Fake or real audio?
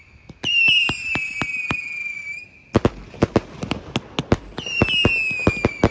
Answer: real